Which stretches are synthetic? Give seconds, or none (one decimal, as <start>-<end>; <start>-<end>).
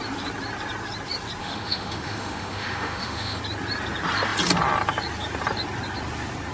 1.4-3.4